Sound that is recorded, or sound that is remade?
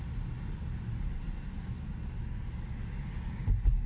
recorded